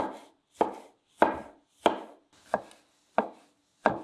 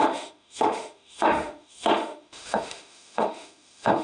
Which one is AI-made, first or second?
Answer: second